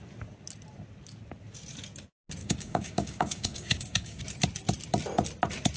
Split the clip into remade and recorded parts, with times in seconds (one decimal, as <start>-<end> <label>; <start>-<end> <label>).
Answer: 0.0-2.4 recorded; 2.4-4.2 remade; 4.2-5.8 recorded